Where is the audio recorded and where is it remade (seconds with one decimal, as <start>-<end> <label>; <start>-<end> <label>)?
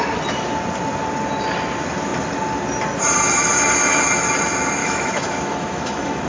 0.0-4.8 recorded; 4.8-6.3 remade